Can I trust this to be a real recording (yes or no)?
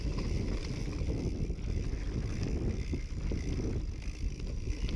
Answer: yes